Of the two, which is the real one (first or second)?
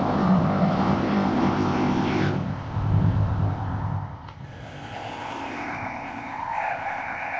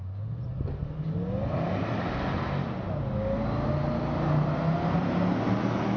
second